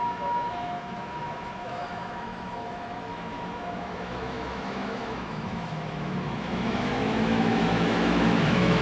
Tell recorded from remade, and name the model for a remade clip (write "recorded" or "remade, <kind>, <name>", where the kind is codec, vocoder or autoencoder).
remade, autoencoder, DAC-VAE